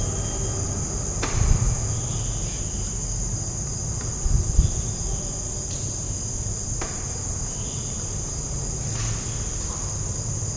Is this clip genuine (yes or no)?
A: yes